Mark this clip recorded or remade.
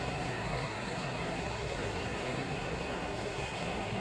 remade